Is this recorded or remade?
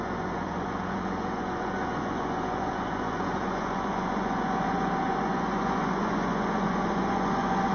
remade